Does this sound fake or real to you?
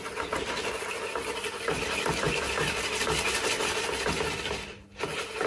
real